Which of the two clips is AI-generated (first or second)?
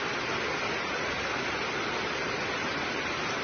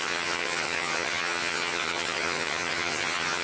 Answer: second